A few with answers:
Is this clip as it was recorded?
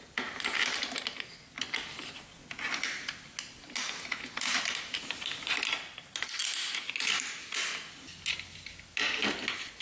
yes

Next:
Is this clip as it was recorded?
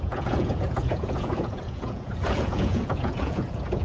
no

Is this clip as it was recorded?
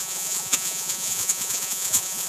no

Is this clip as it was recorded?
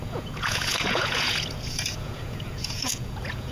no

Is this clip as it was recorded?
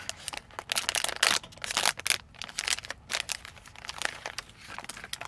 yes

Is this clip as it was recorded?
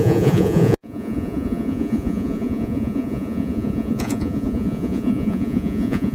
no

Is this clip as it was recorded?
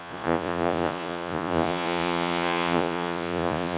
no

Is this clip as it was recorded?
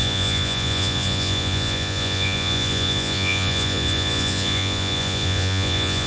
no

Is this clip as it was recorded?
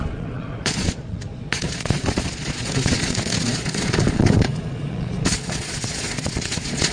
no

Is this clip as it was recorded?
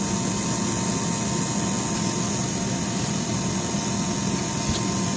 yes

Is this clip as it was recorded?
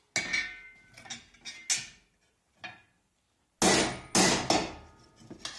yes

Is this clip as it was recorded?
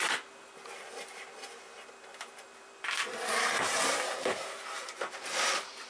yes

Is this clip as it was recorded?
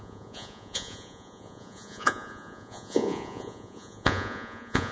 no